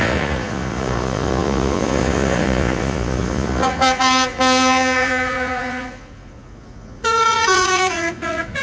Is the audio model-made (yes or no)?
yes